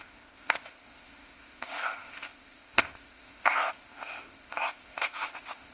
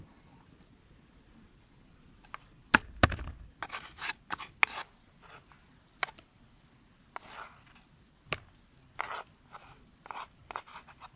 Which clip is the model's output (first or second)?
first